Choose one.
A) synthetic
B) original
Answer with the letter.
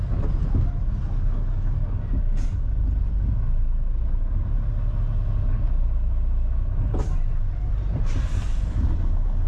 B